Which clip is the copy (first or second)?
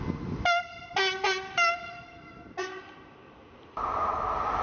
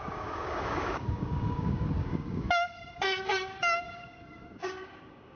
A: second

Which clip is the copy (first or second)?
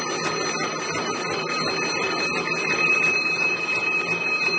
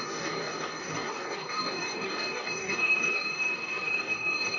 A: second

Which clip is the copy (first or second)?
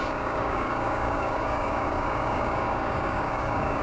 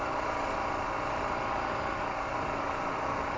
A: first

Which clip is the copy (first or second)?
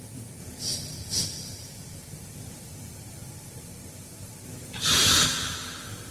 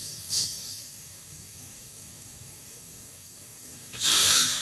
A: second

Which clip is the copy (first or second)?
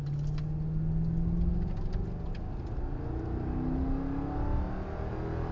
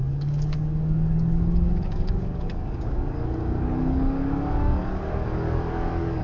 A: second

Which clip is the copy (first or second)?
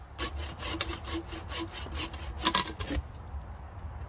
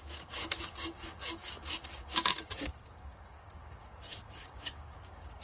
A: second